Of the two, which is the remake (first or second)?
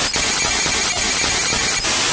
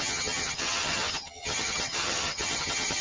second